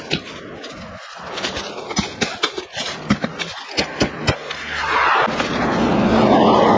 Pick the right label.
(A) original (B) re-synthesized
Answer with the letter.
A